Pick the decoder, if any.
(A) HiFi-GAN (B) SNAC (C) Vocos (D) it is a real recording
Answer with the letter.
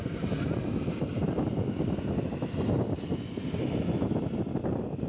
D